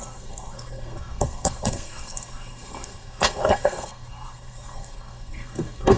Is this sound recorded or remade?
remade